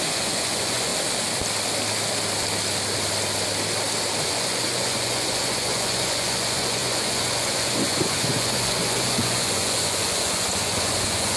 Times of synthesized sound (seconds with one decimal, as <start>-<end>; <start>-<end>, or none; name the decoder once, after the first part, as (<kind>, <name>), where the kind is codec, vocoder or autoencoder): 0.0-0.9 (vocoder, Vocos); 4.2-11.4

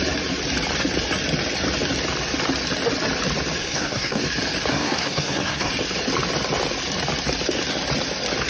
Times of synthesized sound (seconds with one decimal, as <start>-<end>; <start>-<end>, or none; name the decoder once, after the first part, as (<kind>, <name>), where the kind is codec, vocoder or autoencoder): 3.6-4.2 (codec, SNAC); 4.7-5.7

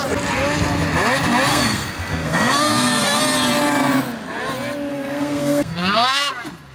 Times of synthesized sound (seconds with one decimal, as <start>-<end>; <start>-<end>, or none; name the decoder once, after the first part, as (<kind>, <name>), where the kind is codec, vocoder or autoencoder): 1.5-3.2 (codec, SNAC); 4.9-6.3

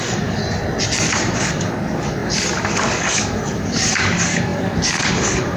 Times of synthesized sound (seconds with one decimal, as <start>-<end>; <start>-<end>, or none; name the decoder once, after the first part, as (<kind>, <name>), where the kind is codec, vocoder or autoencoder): 0.0-0.4 (codec, DAC); 1.4-5.6

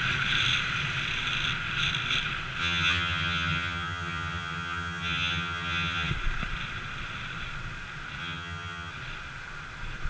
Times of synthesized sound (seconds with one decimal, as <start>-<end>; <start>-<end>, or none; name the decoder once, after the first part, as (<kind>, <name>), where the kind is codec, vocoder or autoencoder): 2.6-6.1 (vocoder, HiFi-GAN); 8.2-8.9